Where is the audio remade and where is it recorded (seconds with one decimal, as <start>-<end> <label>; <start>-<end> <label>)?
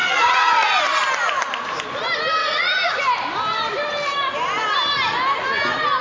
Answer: 0.0-0.8 remade; 0.8-2.4 recorded; 2.4-3.0 remade; 3.0-6.0 recorded